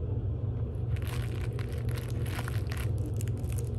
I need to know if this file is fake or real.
real